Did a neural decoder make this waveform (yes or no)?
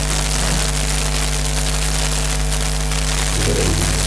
no